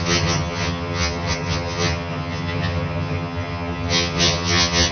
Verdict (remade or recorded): remade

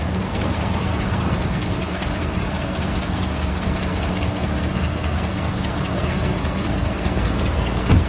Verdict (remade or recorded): remade